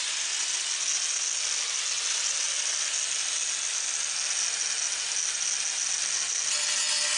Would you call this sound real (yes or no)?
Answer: yes